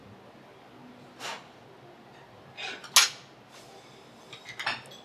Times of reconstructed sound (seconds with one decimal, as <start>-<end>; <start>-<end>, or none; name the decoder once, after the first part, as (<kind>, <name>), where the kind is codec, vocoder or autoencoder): none